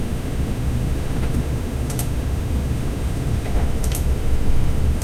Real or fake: fake